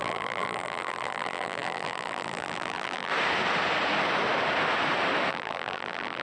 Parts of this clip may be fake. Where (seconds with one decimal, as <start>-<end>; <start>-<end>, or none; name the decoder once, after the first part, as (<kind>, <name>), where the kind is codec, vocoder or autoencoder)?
0.0-3.1 (vocoder, BigVGAN v2); 5.3-6.2